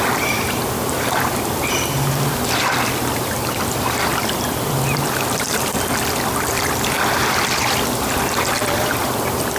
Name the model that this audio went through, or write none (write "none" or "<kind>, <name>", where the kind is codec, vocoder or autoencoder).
vocoder, BigVGAN v2